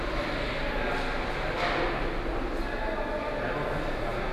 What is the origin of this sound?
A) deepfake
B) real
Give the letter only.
B